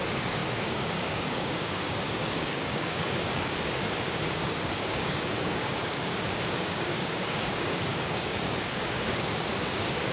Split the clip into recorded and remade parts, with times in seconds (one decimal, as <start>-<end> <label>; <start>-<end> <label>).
0.0-10.1 remade